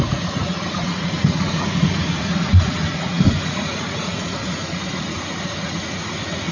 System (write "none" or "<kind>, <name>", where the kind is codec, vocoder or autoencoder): vocoder, Vocos